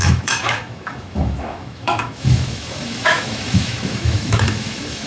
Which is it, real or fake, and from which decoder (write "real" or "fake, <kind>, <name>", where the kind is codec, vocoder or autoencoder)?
fake, autoencoder, DAC-VAE